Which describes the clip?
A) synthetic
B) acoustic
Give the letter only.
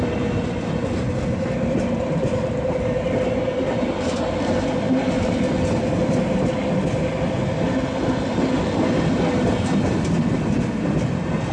B